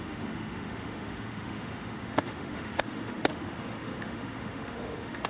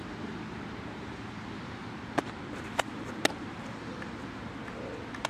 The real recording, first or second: second